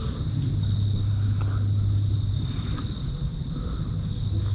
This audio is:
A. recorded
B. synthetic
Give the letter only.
A